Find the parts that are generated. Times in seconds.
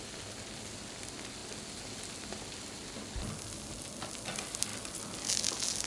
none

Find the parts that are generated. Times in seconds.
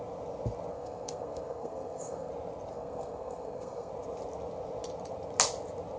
0.7-2.3; 2.7-3.9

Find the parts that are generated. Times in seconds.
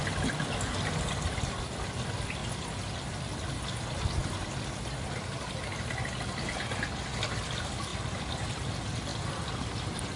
none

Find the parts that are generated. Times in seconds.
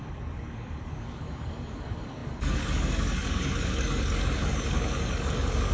0.0-5.7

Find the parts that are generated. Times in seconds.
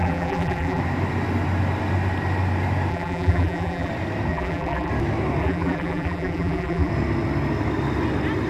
0.0-0.8; 2.9-3.9; 4.3-4.9; 5.4-6.9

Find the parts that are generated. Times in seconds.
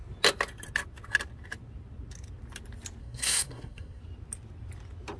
3.0-4.0